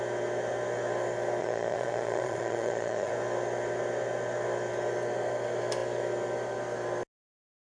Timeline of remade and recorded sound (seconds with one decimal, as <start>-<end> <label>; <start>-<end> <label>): 0.0-1.4 recorded; 1.4-3.1 remade; 3.1-7.6 recorded